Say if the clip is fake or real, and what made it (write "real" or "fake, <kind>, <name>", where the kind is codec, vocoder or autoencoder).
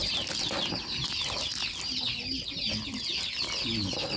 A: real